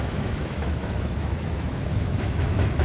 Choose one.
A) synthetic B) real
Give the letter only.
A